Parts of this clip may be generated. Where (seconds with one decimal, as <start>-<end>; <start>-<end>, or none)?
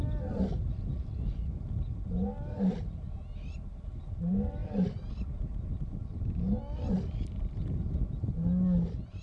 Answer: none